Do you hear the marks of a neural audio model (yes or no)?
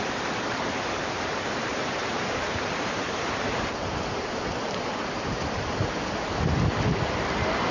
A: yes